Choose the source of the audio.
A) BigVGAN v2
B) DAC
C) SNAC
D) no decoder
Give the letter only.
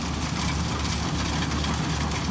D